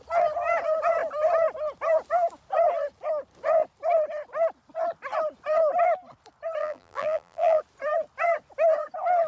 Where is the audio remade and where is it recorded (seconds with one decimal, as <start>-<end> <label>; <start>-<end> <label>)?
0.0-6.6 recorded; 6.6-7.6 remade; 7.6-9.3 recorded